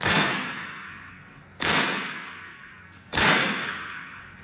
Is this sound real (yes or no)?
no